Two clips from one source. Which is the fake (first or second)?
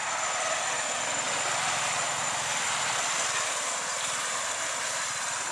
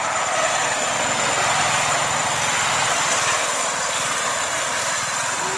first